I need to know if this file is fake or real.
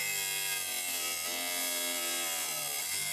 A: real